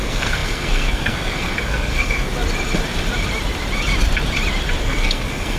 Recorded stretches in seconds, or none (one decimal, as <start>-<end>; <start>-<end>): 2.3-4.8